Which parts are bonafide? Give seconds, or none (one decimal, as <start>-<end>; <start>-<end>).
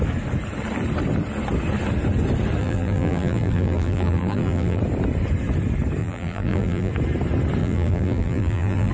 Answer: 0.0-2.6; 4.8-6.0; 6.9-7.6